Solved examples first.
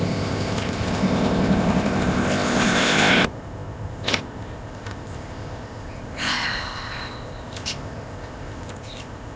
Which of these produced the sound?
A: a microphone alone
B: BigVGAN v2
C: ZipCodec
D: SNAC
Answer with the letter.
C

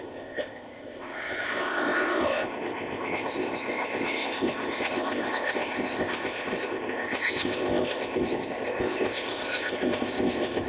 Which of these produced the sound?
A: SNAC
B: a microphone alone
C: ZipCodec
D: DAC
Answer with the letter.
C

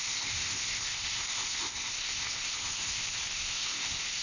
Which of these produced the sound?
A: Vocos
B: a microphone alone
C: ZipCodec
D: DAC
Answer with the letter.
C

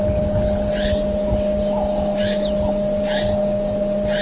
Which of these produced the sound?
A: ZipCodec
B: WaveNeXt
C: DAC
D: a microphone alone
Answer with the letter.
D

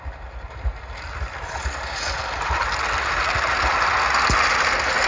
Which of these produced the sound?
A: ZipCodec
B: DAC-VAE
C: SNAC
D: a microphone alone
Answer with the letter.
D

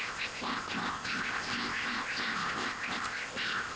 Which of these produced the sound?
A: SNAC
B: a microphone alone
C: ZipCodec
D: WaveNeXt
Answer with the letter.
C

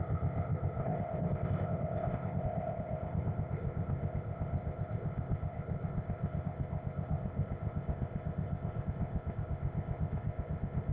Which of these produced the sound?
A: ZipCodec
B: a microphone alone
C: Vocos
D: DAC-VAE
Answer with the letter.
A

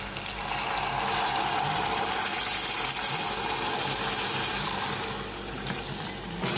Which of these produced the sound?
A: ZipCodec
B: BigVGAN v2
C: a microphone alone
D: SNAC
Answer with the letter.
C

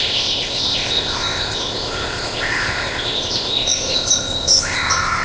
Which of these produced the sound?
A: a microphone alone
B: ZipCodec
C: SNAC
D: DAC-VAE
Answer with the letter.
B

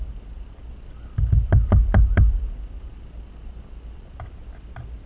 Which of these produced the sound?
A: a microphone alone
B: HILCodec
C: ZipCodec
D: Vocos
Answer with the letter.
A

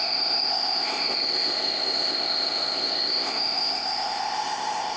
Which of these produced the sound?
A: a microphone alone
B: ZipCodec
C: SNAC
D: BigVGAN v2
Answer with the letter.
B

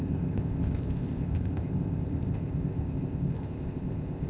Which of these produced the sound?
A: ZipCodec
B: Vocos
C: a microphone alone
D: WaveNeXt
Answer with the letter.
A